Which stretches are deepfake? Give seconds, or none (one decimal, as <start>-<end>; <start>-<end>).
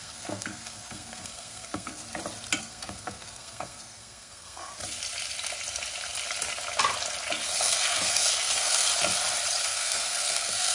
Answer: 0.0-2.0; 2.6-4.7; 7.6-8.9; 9.6-10.7